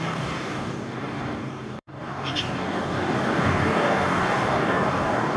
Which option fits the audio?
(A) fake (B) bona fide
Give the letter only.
A